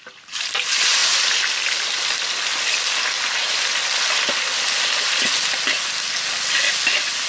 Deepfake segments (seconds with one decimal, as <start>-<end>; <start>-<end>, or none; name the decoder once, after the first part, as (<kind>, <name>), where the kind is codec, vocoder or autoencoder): none